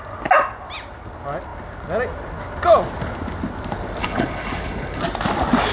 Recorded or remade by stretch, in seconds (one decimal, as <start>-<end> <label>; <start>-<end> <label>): 0.0-4.0 recorded; 4.0-5.0 remade; 5.0-5.7 recorded